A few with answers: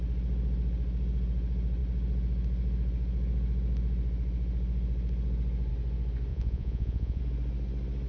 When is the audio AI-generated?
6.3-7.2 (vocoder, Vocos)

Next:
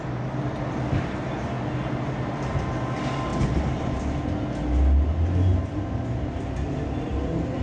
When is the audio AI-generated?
none

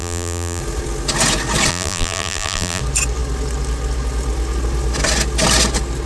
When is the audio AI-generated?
0.0-0.6 (vocoder, BigVGAN v2); 1.7-2.8